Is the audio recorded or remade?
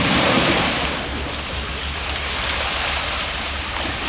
recorded